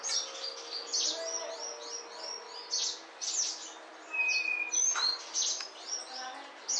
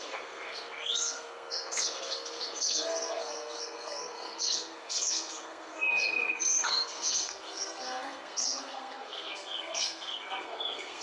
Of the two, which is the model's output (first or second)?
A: second